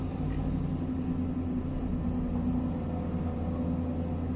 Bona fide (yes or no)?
yes